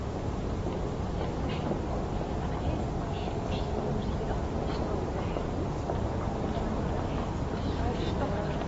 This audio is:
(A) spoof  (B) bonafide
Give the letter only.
B